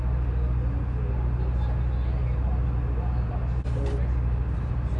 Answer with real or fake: real